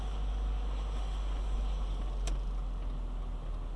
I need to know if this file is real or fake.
real